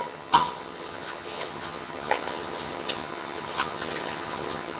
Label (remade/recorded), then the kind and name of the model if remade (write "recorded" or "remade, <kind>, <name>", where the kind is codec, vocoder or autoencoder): remade, vocoder, HiFi-GAN